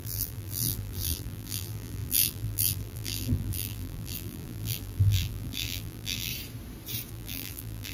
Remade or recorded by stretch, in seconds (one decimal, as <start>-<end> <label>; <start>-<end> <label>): 0.0-6.3 remade; 6.3-7.1 recorded; 7.1-7.9 remade